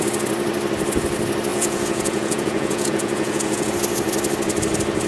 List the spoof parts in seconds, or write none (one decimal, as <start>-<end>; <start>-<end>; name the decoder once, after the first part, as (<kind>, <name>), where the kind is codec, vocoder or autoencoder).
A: 1.5-3.7 (vocoder, Vocos)